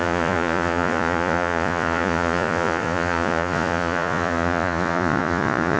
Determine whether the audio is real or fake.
fake